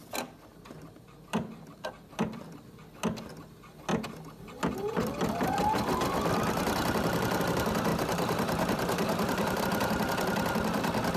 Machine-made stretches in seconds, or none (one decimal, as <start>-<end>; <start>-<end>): 0.5-2.8; 7.9-9.6